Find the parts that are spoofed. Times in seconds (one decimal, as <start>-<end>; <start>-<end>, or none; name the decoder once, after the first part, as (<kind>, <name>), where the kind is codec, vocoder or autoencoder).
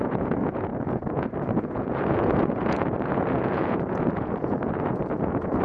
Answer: 0.0-5.6 (vocoder, Vocos)